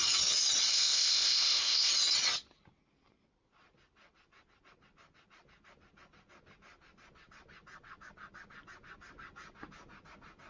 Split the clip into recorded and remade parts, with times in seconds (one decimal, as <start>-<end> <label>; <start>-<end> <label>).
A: 0.0-0.7 recorded; 0.7-1.9 remade; 1.9-10.5 recorded